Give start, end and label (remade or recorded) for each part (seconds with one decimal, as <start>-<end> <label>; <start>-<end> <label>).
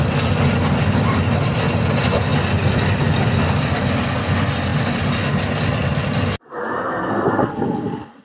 0.0-6.6 recorded; 6.6-7.4 remade; 7.4-8.2 recorded